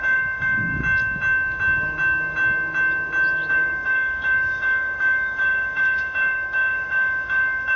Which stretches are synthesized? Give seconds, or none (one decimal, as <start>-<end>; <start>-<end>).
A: 0.0-0.7; 3.5-7.8

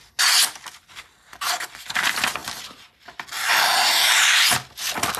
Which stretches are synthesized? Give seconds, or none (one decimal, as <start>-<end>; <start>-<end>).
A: none

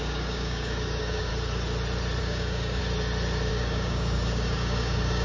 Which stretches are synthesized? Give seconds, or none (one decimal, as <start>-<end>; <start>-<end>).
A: 0.0-1.3; 2.2-2.8; 3.5-5.2